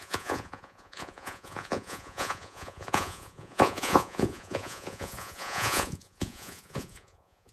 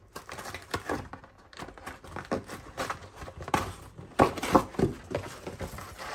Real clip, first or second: second